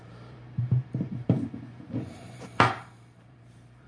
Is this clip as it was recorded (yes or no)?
no